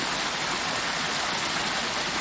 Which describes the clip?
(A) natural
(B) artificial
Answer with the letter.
A